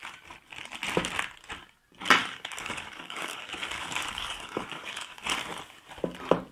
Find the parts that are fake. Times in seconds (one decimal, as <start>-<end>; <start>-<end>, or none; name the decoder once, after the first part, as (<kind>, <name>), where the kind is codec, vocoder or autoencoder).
2.2-5.2 (codec, DAC)